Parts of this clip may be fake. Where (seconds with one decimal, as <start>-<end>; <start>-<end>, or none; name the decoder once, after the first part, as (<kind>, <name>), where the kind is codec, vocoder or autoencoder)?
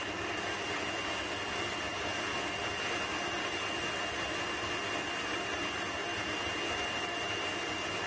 none